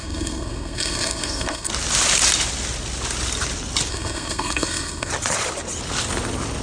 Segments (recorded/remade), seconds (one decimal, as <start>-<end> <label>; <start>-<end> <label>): 0.0-1.7 remade; 1.7-3.9 recorded; 3.9-5.1 remade; 5.1-6.6 recorded